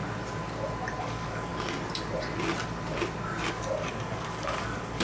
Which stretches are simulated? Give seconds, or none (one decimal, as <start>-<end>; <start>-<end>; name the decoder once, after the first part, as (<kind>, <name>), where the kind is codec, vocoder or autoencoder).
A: 1.0-1.5 (codec, DAC); 3.5-5.0